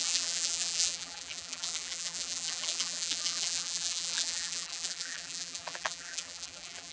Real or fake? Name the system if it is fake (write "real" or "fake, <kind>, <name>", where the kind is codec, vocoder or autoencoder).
fake, vocoder, BigVGAN v2